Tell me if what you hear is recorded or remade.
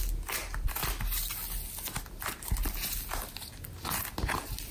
recorded